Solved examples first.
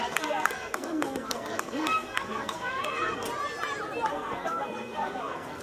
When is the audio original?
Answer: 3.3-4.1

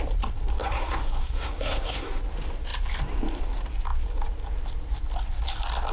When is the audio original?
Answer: 0.0-0.6; 2.2-5.9

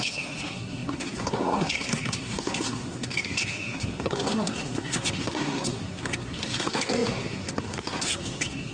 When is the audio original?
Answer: none